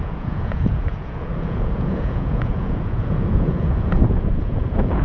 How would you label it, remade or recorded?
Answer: remade